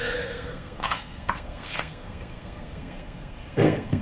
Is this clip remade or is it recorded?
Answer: remade